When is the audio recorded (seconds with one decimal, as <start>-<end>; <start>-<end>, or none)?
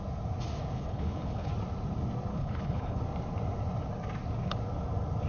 0.0-0.7; 1.5-2.3; 3.0-5.3